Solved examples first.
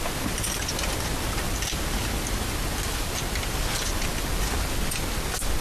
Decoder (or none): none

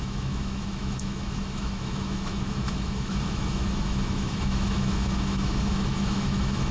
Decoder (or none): autoencoder, DAC-VAE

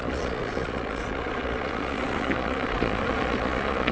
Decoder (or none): vocoder, Vocos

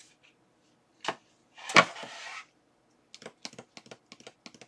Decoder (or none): none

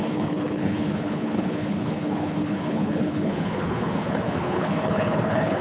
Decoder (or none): codec, HILCodec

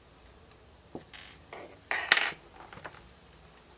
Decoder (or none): none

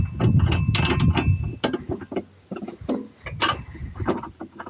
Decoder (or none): none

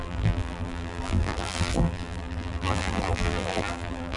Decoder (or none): vocoder, BigVGAN v2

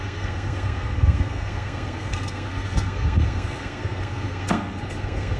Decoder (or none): codec, SNAC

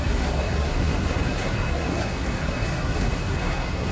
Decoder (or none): codec, SNAC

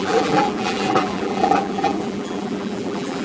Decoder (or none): vocoder, BigVGAN v2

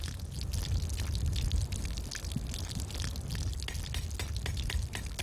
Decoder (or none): none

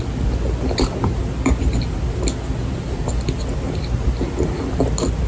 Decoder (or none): none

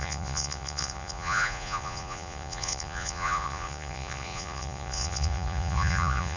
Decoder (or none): vocoder, Vocos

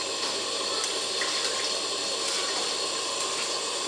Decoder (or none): none